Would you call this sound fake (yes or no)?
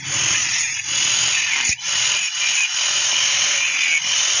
no